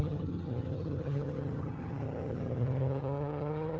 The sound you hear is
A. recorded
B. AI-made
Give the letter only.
B